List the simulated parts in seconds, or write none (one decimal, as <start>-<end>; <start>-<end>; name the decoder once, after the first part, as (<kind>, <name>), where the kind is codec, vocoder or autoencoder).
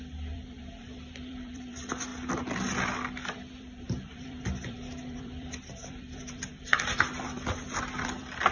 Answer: 0.0-2.1 (vocoder, BigVGAN v2); 3.5-8.5